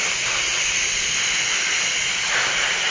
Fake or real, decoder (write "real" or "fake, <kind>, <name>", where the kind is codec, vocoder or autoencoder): real